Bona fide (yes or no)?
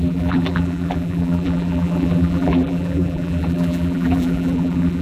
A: no